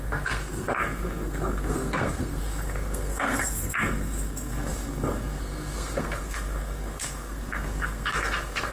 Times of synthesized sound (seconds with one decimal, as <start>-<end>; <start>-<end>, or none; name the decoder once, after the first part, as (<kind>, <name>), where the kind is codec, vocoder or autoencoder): 0.0-8.7 (codec, SNAC)